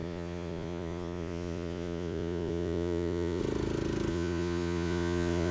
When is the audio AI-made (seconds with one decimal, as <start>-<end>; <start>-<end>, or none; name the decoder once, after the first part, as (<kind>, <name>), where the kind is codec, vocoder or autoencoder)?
0.0-3.4 (vocoder, Vocos); 4.1-5.5

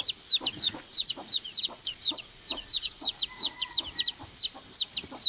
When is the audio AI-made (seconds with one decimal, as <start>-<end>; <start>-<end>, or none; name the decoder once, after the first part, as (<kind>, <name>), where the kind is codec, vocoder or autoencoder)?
0.5-3.7 (vocoder, Vocos)

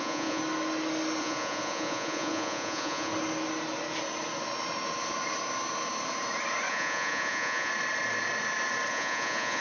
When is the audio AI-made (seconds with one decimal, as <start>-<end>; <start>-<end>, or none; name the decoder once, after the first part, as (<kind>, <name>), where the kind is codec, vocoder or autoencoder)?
0.0-0.4 (vocoder, Vocos); 1.2-3.1; 6.7-7.7; 8.9-9.6

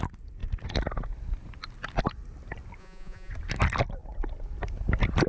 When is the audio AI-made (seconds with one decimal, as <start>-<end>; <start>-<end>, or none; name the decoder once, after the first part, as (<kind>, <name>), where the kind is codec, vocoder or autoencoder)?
2.8-3.3 (vocoder, Vocos)